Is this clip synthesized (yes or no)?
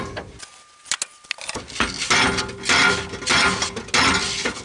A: no